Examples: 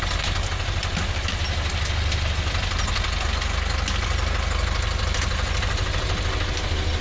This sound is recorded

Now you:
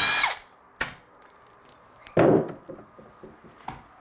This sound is recorded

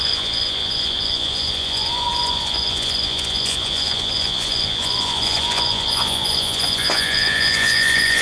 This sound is remade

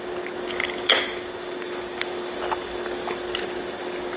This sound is recorded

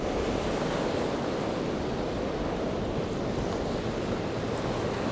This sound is recorded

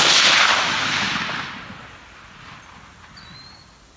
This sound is recorded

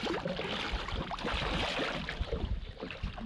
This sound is recorded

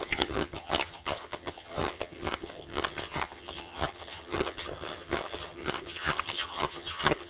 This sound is remade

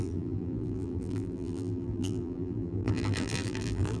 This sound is remade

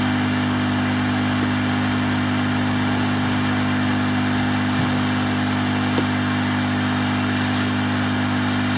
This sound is recorded